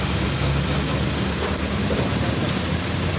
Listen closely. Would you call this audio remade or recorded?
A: recorded